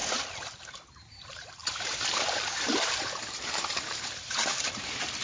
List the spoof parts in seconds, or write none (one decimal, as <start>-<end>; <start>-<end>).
0.6-5.2